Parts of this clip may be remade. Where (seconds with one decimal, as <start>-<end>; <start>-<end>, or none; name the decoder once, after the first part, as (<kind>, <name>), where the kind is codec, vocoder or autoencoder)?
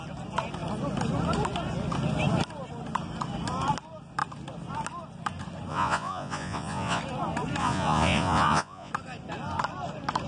5.7-7.0 (vocoder, Vocos); 7.6-8.9